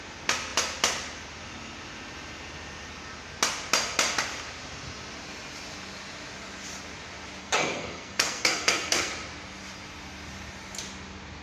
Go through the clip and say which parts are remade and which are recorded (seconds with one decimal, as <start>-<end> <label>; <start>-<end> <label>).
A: 0.0-7.4 recorded; 7.4-9.1 remade; 9.1-11.4 recorded